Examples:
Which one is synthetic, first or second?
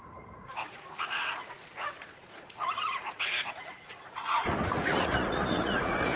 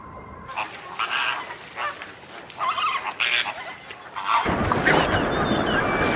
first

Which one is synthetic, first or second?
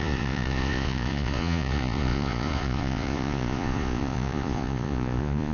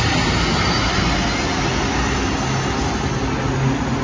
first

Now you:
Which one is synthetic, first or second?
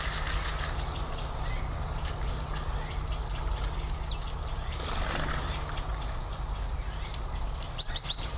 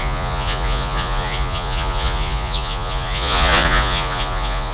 second